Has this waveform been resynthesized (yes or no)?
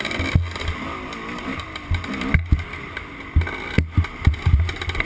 no